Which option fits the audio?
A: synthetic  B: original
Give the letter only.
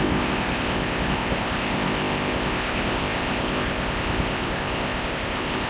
A